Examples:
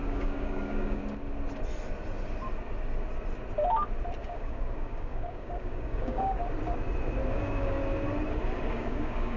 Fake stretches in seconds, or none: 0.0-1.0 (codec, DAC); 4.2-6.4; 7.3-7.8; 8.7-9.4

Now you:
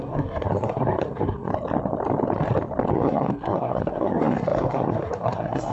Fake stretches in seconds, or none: 0.0-1.5 (codec, SNAC); 2.9-5.7

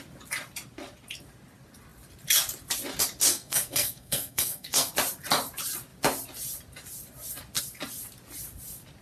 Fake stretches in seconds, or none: 3.3-4.9 (codec, SNAC)